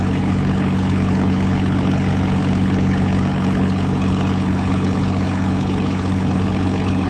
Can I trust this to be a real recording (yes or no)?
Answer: no